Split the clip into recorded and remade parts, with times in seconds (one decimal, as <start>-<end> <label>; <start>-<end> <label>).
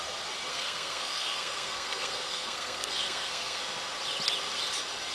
0.0-0.5 recorded; 0.5-3.6 remade; 3.6-5.1 recorded